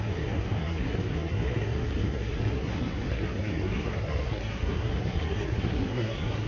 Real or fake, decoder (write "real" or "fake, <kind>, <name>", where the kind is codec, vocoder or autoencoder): fake, codec, SNAC